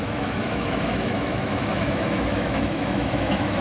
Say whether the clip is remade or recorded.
remade